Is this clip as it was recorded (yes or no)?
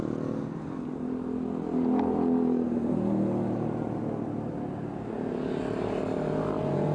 yes